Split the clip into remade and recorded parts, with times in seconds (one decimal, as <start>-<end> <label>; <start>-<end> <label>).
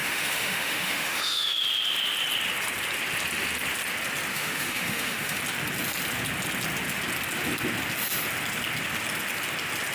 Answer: 0.0-1.6 remade; 1.6-4.3 recorded; 4.3-5.4 remade; 5.4-9.9 recorded